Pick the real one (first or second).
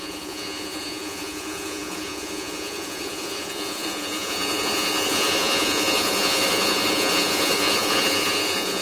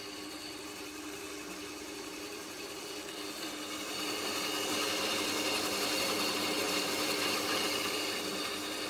second